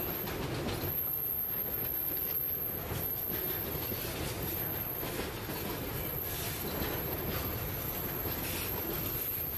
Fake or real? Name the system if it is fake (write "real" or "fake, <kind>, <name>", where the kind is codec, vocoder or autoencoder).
real